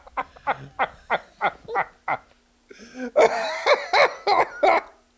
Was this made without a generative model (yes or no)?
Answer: yes